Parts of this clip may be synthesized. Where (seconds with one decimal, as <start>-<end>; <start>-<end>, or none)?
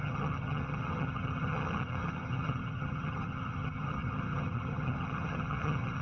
0.0-6.0